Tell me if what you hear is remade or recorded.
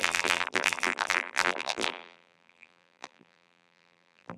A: remade